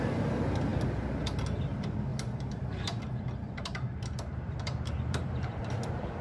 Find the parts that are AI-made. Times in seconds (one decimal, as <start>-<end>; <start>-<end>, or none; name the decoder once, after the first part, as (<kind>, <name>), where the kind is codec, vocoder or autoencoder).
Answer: 2.1-3.0 (vocoder, BigVGAN v2); 3.4-5.6